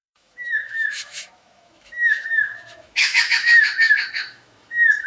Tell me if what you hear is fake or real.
fake